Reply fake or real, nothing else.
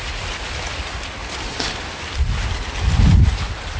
real